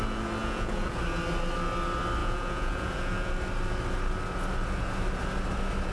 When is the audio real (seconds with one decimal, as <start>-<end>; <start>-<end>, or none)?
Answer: 0.0-0.4; 1.0-2.2; 3.3-5.9